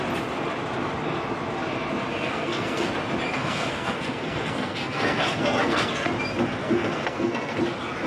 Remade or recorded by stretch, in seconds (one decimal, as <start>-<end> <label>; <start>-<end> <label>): 0.0-2.1 recorded; 2.1-2.9 remade; 2.9-3.3 recorded; 3.3-6.1 remade; 6.1-6.6 recorded; 6.6-7.6 remade; 7.6-8.1 recorded